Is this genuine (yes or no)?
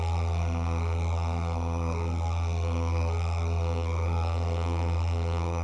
no